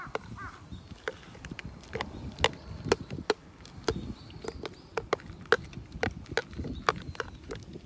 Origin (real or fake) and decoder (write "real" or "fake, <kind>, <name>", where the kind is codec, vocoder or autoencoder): real